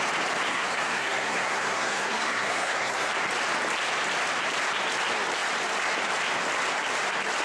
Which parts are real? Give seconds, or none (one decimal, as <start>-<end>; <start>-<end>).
0.0-0.5; 3.1-7.4